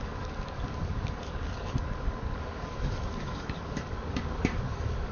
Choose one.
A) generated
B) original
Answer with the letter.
A